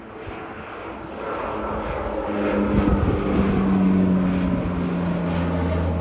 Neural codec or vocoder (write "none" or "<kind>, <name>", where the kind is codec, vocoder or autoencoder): none